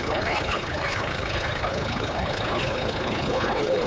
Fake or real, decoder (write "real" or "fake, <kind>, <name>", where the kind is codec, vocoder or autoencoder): fake, codec, HILCodec